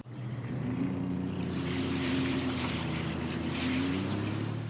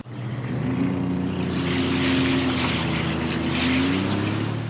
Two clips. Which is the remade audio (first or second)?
first